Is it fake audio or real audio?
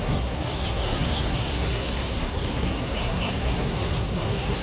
fake